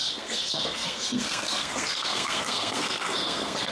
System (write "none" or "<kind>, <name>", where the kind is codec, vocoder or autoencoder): codec, SNAC